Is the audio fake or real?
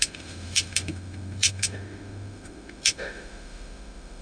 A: fake